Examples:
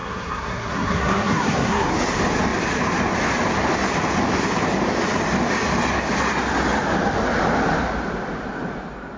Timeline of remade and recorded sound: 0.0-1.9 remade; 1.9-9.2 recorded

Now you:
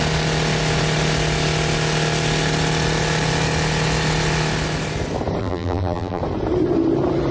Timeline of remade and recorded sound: 0.0-5.4 recorded; 5.4-6.2 remade; 6.2-7.3 recorded

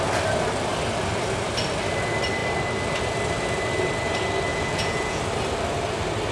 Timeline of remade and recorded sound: 0.0-4.5 recorded; 4.5-5.2 remade; 5.2-6.3 recorded

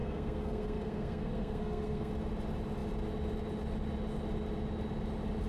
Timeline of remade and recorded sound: 0.0-2.1 remade; 2.1-5.5 recorded

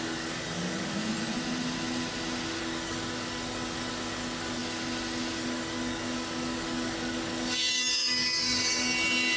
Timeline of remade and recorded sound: 0.0-1.0 remade; 1.0-2.6 recorded; 2.6-4.6 remade; 4.6-5.4 recorded; 5.4-9.4 remade

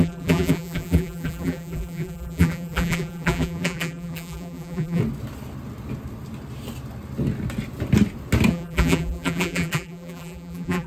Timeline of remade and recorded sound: 0.0-5.0 remade; 5.0-8.5 recorded; 8.5-10.9 remade

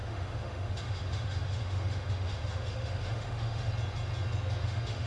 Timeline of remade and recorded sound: 0.0-3.7 remade; 3.7-4.6 recorded; 4.6-5.1 remade

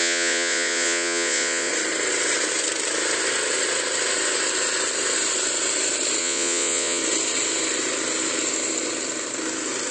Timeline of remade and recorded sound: 0.0-1.7 remade; 1.7-6.2 recorded; 6.2-7.0 remade; 7.0-9.9 recorded